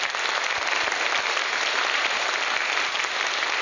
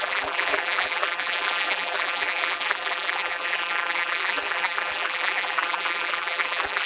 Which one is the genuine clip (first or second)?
first